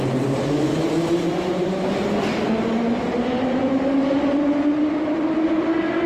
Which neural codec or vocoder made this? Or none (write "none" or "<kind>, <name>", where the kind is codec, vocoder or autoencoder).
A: none